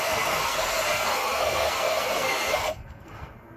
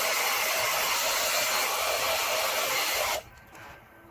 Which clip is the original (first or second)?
second